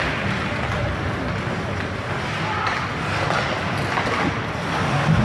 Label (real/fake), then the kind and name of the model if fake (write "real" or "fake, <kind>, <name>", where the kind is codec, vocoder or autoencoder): real